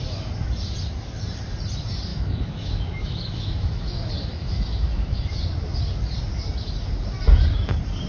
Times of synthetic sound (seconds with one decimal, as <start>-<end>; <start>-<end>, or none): 2.1-5.4